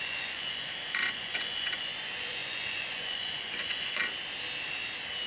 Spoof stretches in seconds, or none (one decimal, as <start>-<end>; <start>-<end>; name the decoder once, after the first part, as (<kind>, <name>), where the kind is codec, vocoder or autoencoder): 0.0-4.0 (vocoder, Vocos)